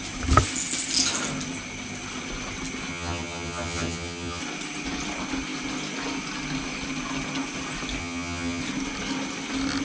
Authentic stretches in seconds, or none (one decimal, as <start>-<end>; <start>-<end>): 0.0-2.9; 4.4-8.0; 8.6-9.8